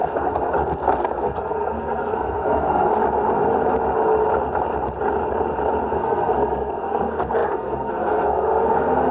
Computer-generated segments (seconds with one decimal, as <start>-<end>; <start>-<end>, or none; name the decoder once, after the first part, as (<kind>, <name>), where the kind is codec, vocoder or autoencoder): 0.0-2.9 (codec, SNAC); 5.9-9.1